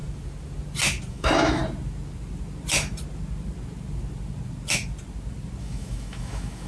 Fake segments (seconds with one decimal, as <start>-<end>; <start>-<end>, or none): 1.1-1.6; 5.6-6.7